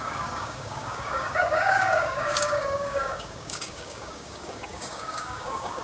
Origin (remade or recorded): remade